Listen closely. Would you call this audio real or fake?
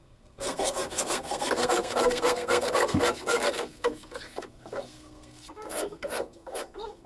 fake